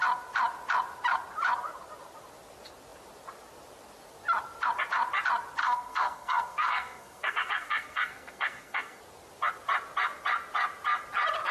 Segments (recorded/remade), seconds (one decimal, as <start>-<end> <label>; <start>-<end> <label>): 0.0-5.6 recorded; 5.6-9.0 remade; 9.0-11.5 recorded